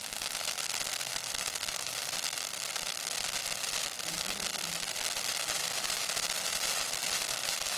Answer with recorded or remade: recorded